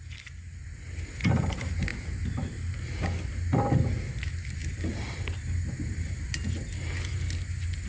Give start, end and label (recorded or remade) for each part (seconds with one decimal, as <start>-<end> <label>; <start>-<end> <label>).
0.0-7.9 recorded